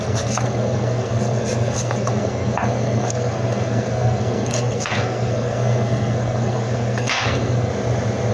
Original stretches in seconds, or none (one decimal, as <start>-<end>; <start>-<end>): 7.7-8.3